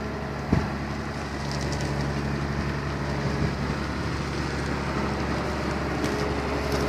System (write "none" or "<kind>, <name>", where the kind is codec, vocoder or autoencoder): none